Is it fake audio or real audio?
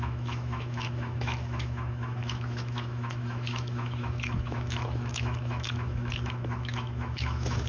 fake